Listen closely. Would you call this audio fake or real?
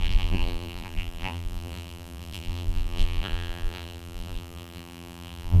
fake